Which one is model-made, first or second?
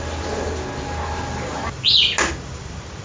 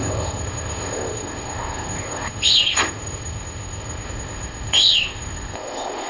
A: second